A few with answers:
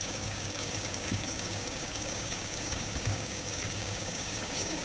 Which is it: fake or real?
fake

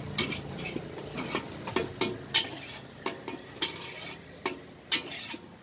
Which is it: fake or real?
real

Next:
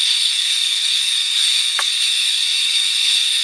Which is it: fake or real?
fake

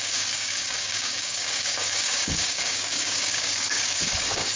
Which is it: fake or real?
fake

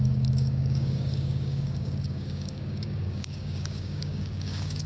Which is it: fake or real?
fake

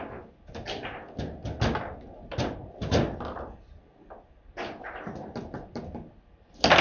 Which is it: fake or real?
real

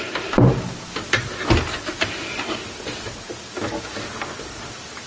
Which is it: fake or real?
real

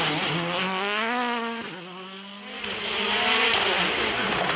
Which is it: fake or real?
real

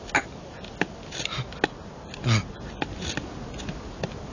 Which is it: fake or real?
real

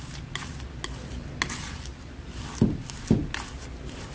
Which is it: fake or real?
real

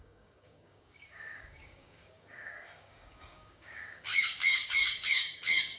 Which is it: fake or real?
fake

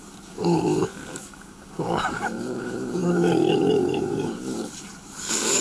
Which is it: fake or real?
fake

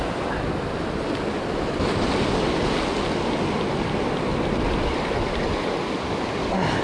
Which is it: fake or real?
real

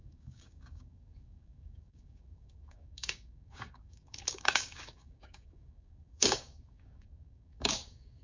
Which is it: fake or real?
fake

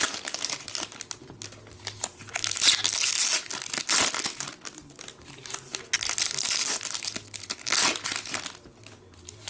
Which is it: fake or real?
real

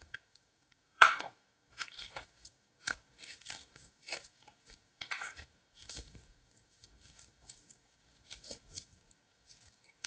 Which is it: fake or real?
fake